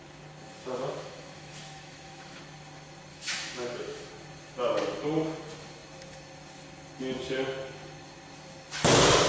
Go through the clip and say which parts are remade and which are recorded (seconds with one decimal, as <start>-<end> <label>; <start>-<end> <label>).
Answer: 0.0-0.6 recorded; 0.6-2.4 remade; 2.4-3.1 recorded; 3.1-4.1 remade; 4.1-9.3 recorded